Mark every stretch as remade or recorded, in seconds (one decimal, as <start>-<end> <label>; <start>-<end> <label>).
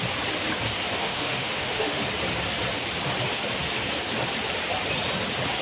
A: 0.0-1.0 recorded; 1.0-2.0 remade; 2.0-5.6 recorded